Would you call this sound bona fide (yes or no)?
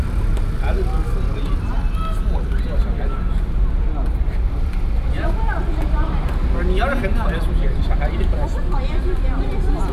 yes